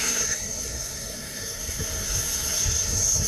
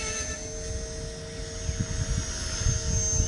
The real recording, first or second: second